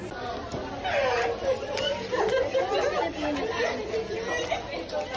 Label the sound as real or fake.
real